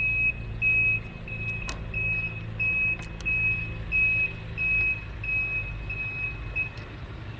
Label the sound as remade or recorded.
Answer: recorded